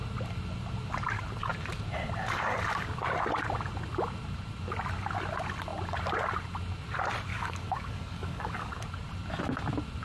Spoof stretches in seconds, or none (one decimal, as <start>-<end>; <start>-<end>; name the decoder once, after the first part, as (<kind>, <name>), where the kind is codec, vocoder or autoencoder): 7.3-8.7 (codec, DAC)